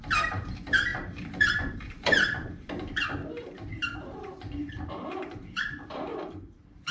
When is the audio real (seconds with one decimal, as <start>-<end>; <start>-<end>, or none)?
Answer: none